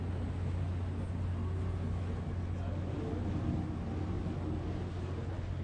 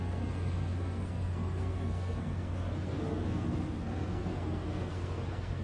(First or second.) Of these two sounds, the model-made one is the second